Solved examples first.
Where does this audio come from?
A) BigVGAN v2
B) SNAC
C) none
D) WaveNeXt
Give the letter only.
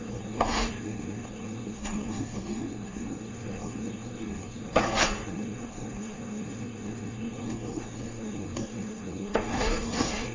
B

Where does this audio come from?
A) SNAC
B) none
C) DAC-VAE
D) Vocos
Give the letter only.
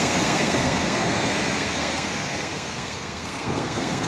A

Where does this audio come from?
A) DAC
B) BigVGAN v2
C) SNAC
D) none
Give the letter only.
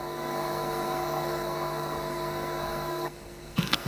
C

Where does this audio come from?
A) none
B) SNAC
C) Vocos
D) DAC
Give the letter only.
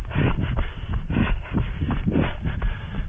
A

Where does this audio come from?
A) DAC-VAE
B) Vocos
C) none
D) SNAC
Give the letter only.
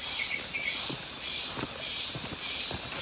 C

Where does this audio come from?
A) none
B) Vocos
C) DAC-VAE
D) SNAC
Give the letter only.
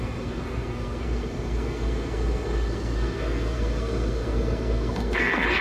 D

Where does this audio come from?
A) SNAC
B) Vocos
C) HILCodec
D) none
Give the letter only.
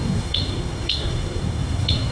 A